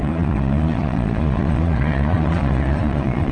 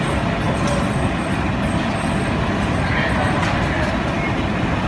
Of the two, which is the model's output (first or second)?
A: first